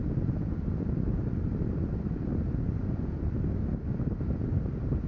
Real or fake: real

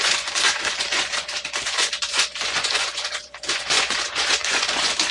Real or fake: fake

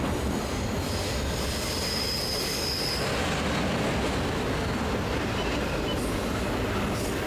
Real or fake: real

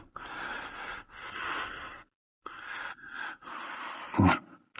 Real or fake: real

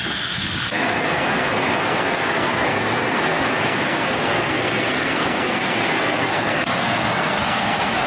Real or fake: fake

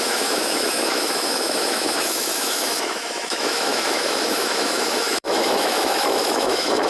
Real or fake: fake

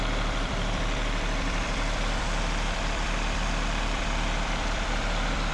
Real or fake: fake